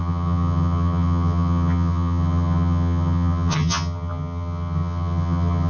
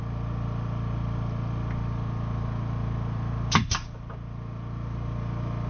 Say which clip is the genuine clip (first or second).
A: second